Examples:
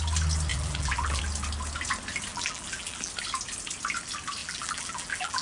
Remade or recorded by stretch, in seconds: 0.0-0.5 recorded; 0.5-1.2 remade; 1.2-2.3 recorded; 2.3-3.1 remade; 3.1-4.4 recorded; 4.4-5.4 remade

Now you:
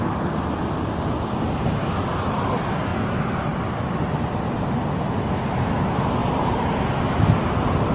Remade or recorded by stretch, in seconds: 0.0-7.9 recorded

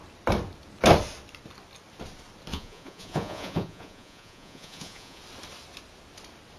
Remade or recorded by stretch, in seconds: 0.0-2.5 recorded; 2.5-5.2 remade; 5.2-6.6 recorded